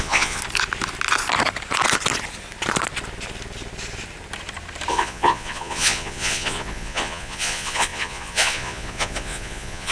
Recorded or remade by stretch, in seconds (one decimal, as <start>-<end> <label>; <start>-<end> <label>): 0.0-0.4 remade; 0.4-4.9 recorded; 4.9-9.9 remade